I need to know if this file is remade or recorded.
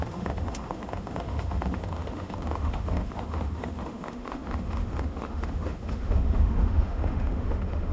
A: remade